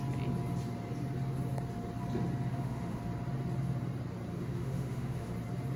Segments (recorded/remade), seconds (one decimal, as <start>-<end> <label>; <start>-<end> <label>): 0.0-2.5 recorded; 2.5-3.0 remade; 3.0-4.3 recorded; 4.3-5.3 remade; 5.3-5.8 recorded